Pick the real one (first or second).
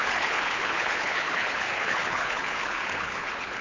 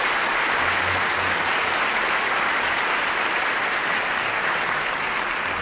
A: second